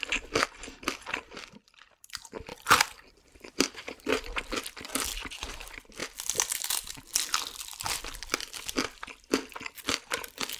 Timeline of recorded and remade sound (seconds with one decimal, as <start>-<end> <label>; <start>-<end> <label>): 0.0-6.0 remade; 6.0-7.6 recorded; 7.6-10.6 remade